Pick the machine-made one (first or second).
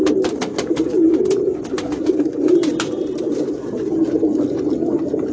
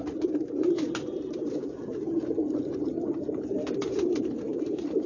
second